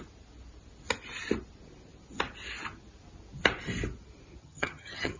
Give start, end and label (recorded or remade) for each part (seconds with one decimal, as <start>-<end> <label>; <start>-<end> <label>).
0.0-4.4 recorded; 4.4-5.2 remade